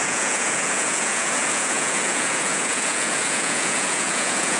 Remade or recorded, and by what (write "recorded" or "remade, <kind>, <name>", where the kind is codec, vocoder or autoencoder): remade, vocoder, Vocos